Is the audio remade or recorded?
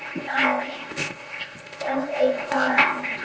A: remade